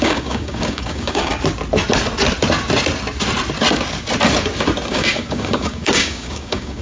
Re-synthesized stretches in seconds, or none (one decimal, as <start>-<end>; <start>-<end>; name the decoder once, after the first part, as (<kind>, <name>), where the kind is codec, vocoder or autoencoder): 0.0-1.3 (codec, DAC); 4.9-6.8